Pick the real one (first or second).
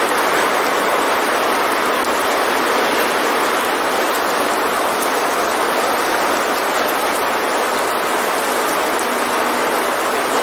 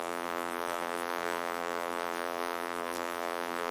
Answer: first